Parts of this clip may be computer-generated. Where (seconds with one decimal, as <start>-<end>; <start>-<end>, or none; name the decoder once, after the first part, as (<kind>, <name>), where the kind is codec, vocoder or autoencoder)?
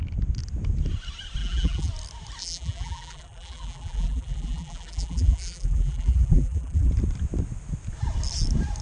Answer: 1.4-1.9 (vocoder, BigVGAN v2); 2.4-6.9